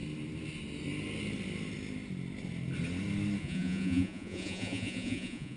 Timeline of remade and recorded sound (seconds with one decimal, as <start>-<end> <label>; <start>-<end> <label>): 0.0-3.4 recorded; 3.4-5.6 remade